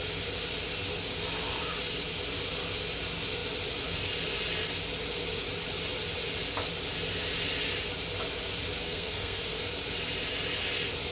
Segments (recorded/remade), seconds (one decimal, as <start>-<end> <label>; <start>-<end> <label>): 0.0-8.8 recorded; 8.8-9.4 remade; 9.4-11.1 recorded